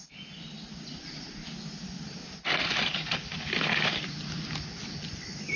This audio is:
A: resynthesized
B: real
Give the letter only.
B